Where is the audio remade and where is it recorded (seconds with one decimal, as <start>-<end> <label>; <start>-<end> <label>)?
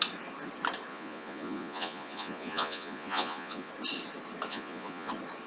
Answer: 0.0-0.9 recorded; 0.9-3.7 remade; 3.7-4.5 recorded; 4.5-5.1 remade; 5.1-5.5 recorded